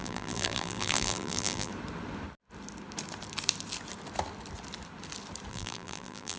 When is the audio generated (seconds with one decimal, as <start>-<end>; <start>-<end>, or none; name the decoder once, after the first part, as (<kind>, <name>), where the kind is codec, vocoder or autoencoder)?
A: 0.0-1.7 (vocoder, BigVGAN v2); 5.5-6.4